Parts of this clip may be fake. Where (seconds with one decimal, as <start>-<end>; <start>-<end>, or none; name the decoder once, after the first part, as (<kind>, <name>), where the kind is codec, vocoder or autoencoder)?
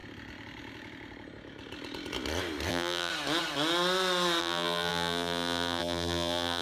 2.7-3.1 (vocoder, BigVGAN v2); 4.4-6.6